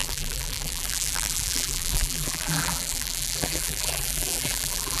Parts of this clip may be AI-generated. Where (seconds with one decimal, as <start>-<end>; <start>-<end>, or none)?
0.0-5.0